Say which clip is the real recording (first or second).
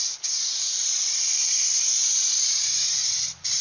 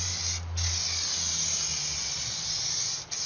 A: second